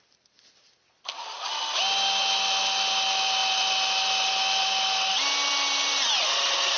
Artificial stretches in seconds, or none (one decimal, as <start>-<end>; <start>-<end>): none